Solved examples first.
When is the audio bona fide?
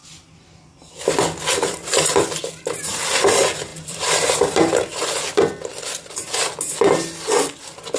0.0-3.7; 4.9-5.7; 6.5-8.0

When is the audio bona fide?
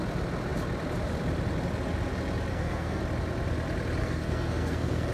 0.0-2.5; 3.0-4.0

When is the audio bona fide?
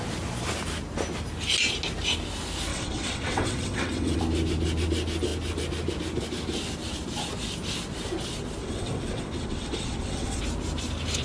0.0-2.7; 4.2-8.6; 10.4-11.2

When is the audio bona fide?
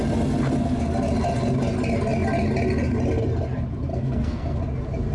0.0-3.9; 4.6-5.1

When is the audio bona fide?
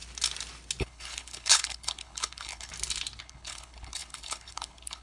0.0-0.8; 2.7-3.2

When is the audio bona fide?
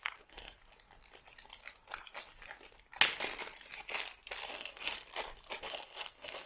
0.6-4.5; 4.9-5.6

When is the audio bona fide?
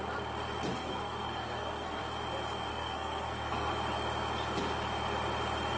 0.0-0.7; 2.0-2.7; 3.7-5.8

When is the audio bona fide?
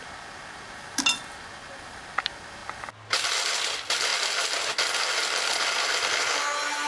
0.0-6.9